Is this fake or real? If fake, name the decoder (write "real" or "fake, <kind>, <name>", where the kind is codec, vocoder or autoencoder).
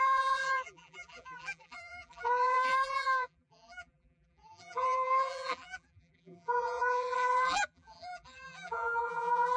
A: fake, vocoder, BigVGAN v2